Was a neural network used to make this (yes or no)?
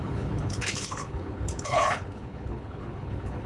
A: yes